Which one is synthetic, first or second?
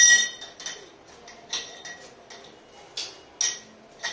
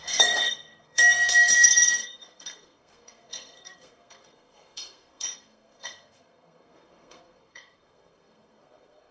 second